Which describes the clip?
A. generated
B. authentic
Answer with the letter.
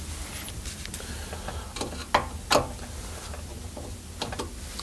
B